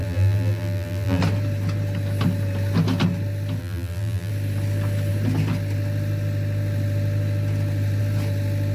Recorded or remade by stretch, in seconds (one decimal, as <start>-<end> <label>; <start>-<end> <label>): 0.0-1.2 remade; 1.2-3.6 recorded; 3.6-4.3 remade; 4.3-8.7 recorded